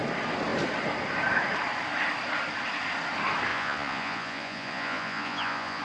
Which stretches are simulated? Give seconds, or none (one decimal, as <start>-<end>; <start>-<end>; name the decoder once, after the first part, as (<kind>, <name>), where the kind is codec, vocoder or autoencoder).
3.5-5.8 (vocoder, Vocos)